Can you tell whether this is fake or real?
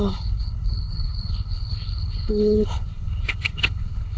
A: fake